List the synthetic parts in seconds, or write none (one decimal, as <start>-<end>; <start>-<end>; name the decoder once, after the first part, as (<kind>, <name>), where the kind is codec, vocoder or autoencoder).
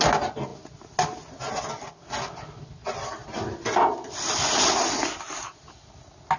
none